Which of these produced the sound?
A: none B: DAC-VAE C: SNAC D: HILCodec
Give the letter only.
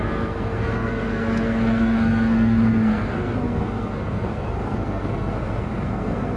C